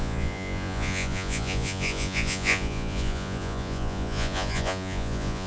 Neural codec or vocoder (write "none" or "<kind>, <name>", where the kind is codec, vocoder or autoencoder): vocoder, Vocos